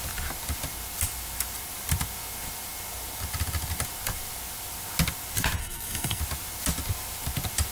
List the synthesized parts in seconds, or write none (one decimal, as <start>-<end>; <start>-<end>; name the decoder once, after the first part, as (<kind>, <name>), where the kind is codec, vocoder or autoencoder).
5.6-6.2 (codec, SNAC)